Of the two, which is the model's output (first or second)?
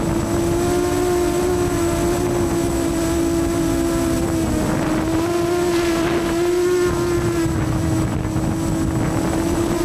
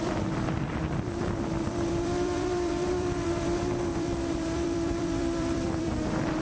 second